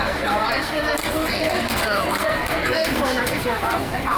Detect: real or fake fake